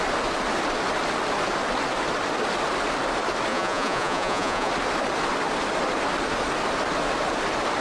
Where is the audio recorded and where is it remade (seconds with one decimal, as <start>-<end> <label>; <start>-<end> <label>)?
0.0-3.5 recorded; 3.5-4.7 remade; 4.7-7.8 recorded